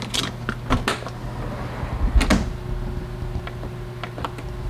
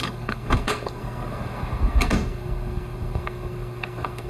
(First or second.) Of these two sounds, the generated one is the second